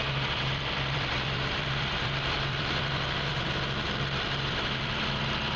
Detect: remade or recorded remade